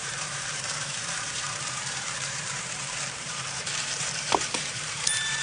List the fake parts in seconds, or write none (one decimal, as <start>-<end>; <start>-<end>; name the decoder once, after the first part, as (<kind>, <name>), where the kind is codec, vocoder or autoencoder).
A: 0.0-5.4 (vocoder, BigVGAN v2)